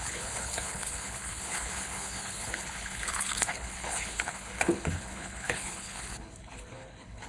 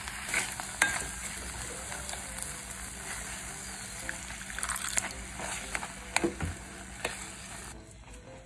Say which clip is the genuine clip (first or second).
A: second